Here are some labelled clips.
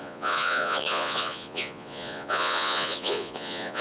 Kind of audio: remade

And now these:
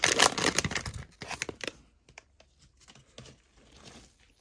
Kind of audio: recorded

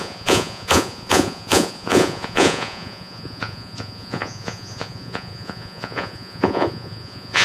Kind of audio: remade